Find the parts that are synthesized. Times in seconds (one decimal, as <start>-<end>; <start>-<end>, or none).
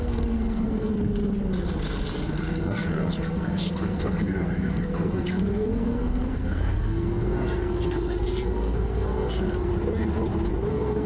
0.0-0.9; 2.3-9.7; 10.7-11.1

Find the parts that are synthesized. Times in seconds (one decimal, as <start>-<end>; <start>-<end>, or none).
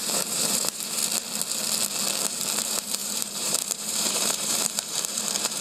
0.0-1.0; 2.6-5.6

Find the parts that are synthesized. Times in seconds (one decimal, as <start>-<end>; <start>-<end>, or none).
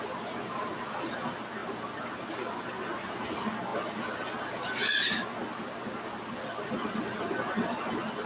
none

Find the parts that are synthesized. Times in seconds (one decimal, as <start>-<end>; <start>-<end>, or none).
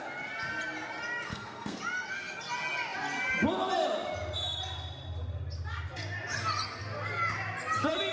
1.3-1.8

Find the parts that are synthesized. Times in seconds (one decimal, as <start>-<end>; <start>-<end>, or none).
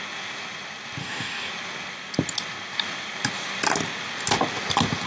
1.0-1.5